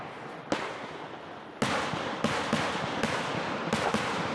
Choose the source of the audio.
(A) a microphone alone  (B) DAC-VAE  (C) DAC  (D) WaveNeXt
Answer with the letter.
A